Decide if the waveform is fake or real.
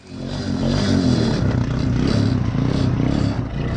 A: real